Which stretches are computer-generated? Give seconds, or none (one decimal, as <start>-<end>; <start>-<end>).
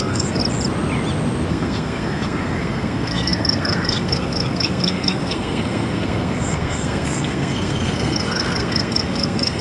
0.0-0.4; 1.5-9.6